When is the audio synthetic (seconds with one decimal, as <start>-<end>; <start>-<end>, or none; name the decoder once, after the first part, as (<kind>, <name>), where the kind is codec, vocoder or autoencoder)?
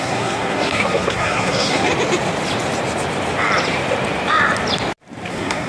0.0-1.9 (codec, SNAC); 5.3-5.7